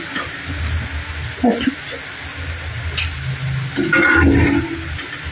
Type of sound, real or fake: real